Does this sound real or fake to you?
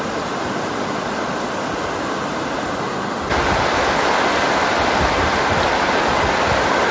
real